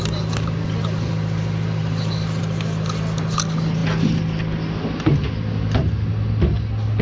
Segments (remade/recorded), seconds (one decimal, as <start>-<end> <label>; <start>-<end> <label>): 0.0-7.0 recorded